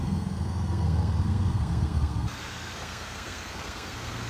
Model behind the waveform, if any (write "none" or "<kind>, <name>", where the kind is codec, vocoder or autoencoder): codec, SNAC